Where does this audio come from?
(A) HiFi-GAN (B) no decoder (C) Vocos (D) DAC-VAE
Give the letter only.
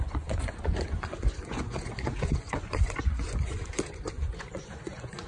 C